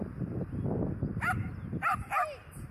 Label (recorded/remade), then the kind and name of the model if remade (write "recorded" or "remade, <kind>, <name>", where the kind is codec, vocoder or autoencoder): recorded